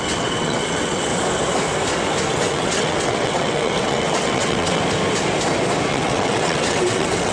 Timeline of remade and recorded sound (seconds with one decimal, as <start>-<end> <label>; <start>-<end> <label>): 0.0-1.1 remade; 1.1-2.3 recorded; 2.3-4.8 remade; 4.8-5.9 recorded; 5.9-7.3 remade